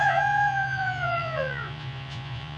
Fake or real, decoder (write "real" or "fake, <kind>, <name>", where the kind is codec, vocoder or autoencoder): fake, vocoder, Vocos